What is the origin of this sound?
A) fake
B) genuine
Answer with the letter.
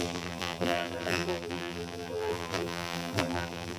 A